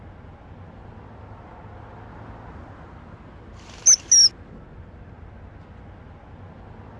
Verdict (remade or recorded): recorded